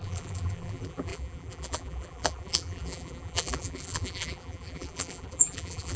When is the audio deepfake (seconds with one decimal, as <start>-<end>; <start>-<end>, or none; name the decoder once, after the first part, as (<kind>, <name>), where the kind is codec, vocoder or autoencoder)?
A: 0.0-6.0 (vocoder, BigVGAN v2)